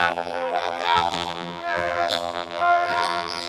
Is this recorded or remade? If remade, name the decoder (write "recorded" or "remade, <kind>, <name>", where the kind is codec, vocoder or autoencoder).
remade, vocoder, BigVGAN v2